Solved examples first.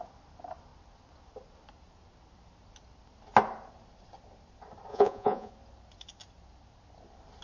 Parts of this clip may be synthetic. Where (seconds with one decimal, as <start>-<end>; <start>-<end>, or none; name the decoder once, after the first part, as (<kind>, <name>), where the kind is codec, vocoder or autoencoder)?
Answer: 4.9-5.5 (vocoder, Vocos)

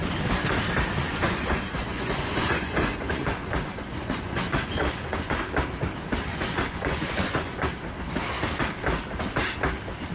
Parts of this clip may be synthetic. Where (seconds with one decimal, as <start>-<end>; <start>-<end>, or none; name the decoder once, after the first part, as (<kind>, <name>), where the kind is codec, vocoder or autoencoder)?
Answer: 1.0-5.4 (vocoder, Vocos); 6.3-7.7

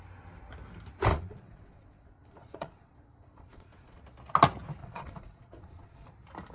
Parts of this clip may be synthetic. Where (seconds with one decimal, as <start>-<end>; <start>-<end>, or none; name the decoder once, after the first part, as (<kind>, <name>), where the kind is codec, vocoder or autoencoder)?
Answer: 1.1-4.0 (vocoder, Vocos); 4.8-6.1